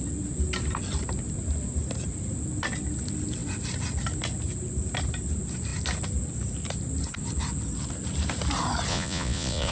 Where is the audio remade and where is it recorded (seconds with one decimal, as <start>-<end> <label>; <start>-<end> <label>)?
0.0-8.9 recorded; 8.9-9.7 remade